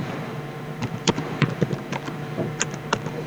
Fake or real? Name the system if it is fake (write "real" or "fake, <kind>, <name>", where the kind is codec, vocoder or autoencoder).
fake, vocoder, BigVGAN v2